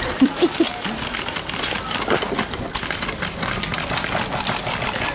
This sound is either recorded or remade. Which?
recorded